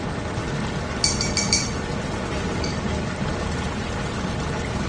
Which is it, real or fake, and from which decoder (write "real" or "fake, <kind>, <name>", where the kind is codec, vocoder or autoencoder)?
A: real